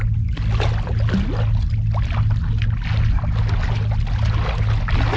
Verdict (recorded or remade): recorded